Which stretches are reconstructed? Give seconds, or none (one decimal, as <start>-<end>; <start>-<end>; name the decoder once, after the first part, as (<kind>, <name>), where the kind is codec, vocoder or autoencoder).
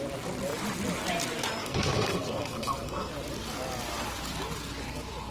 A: 1.6-3.1 (codec, SNAC)